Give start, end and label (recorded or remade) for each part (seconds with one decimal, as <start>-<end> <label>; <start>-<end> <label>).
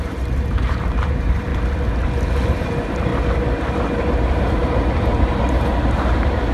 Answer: 0.0-1.5 remade; 1.5-2.6 recorded; 2.6-3.1 remade; 3.1-4.1 recorded; 4.1-6.5 remade